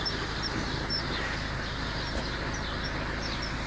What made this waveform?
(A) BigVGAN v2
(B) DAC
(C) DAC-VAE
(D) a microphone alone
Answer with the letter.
A